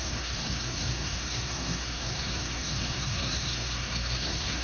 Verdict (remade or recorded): remade